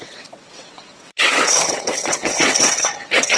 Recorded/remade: remade